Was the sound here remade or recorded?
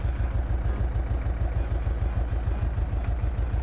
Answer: recorded